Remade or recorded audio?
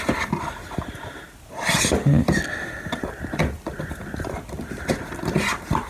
recorded